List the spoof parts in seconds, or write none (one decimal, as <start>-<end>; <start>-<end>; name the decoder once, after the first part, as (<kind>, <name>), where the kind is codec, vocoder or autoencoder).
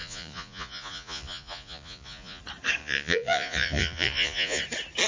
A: 0.0-2.4 (vocoder, Vocos); 2.8-4.6